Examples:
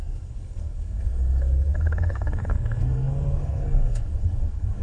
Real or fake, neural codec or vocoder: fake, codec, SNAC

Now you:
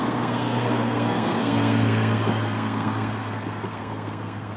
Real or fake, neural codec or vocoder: fake, codec, SNAC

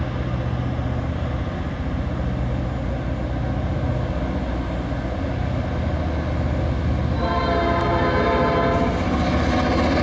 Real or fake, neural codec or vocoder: real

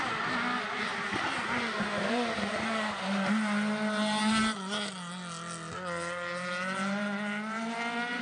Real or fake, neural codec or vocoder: real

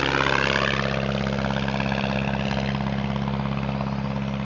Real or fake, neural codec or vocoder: real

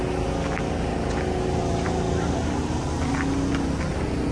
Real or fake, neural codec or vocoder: real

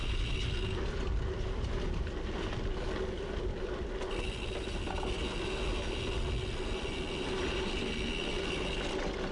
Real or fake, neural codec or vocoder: real